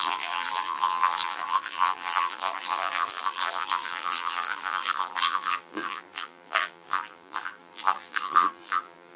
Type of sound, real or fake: fake